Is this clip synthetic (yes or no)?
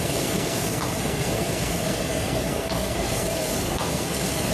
yes